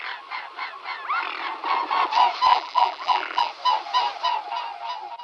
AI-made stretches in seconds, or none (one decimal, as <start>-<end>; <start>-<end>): 2.5-3.5